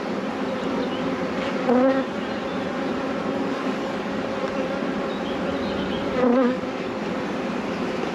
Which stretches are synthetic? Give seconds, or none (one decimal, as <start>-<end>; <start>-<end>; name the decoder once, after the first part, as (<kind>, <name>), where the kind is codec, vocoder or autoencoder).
3.2-4.1 (codec, DAC); 6.3-7.0